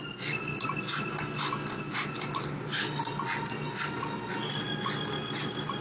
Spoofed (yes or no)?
no